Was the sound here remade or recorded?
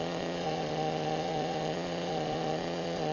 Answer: remade